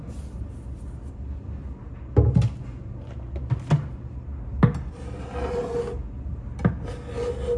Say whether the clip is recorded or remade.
recorded